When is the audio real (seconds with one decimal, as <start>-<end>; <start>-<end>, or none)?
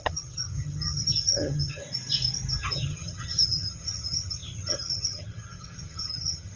1.8-2.6